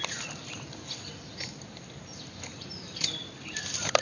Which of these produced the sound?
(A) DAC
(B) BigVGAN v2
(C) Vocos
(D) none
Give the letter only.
B